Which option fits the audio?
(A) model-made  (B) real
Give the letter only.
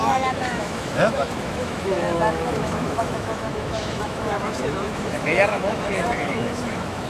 A